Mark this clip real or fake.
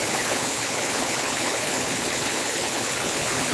fake